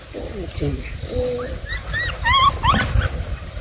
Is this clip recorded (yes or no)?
yes